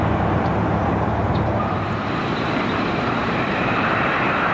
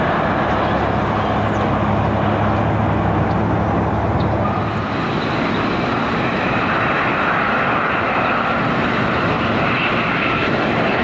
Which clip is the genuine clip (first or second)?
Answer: second